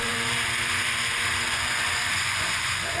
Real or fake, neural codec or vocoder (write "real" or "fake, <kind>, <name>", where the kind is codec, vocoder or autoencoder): fake, vocoder, Vocos